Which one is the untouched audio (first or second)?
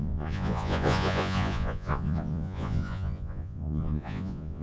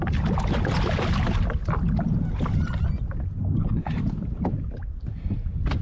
second